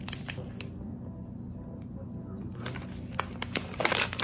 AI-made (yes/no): no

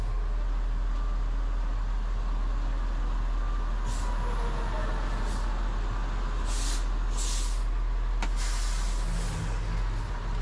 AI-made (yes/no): no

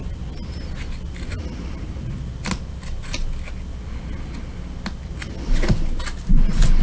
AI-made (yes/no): no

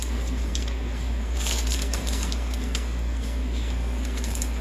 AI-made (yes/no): yes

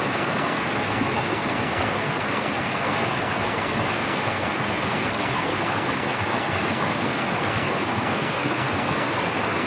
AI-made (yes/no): yes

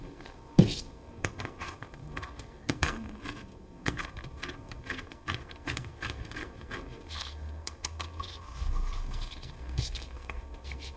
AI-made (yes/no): yes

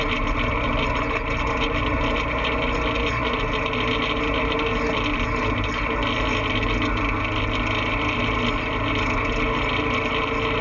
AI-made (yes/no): no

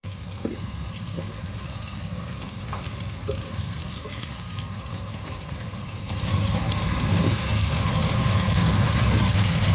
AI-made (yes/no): yes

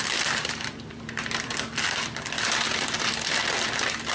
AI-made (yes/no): no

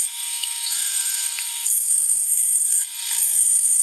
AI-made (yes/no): yes